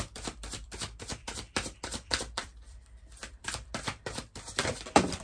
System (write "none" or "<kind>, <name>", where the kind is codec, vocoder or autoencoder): vocoder, BigVGAN v2